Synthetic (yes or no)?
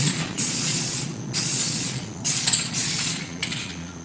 yes